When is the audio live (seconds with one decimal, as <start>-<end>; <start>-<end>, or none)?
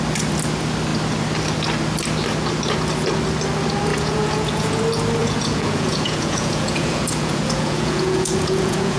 0.0-3.9; 4.8-5.2